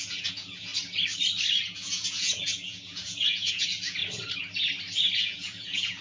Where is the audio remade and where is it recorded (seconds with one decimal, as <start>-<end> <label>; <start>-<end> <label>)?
0.0-0.7 remade; 0.7-1.6 recorded; 1.6-4.0 remade; 4.0-5.1 recorded; 5.1-6.0 remade